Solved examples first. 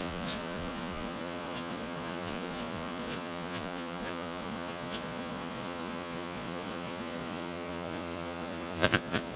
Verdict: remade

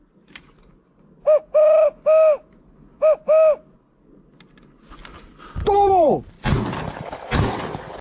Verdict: recorded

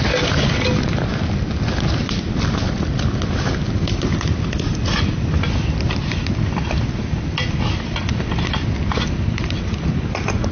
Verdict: recorded